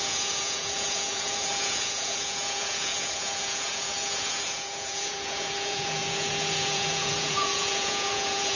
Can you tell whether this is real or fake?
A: fake